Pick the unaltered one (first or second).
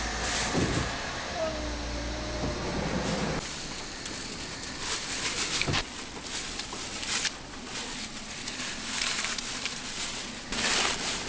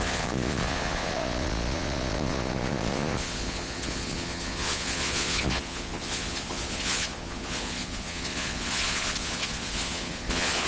first